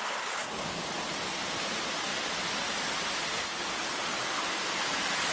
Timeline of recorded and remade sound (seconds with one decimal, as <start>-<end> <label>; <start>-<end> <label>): 0.0-0.9 remade; 0.9-5.3 recorded